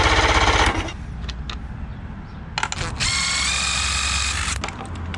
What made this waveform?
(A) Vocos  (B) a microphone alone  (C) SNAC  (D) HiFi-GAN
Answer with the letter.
B